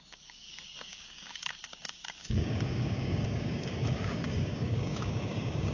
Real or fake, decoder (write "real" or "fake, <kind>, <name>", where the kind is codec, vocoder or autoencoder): fake, codec, DAC